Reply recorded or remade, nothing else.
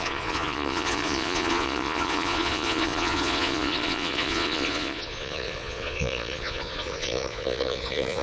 remade